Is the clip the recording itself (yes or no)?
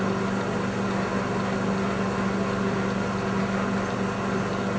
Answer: yes